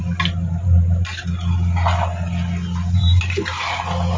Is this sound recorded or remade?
recorded